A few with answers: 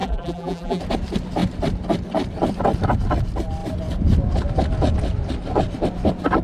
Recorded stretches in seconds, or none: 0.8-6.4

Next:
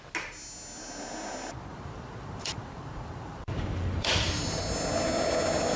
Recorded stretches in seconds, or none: 0.0-1.7; 4.6-5.8

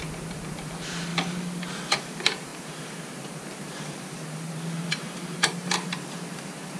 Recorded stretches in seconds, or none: 1.1-1.8

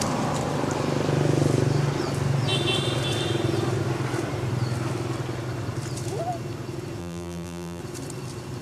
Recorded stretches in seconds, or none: 0.0-7.0; 7.8-8.6